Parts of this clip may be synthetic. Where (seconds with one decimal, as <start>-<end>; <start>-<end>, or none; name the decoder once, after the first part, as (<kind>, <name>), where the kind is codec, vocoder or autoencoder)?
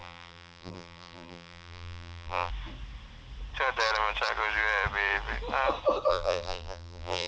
0.0-2.5 (vocoder, BigVGAN v2); 6.1-7.3